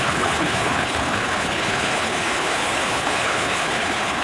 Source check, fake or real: fake